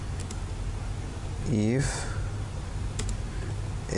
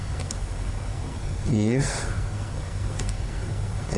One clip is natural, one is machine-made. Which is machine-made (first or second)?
second